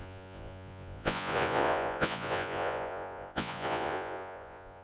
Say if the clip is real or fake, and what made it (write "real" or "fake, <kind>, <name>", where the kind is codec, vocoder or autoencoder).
fake, vocoder, Vocos